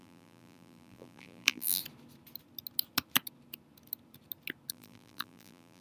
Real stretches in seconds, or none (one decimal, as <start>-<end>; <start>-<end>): 1.8-4.7